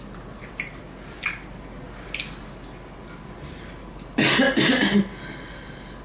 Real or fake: real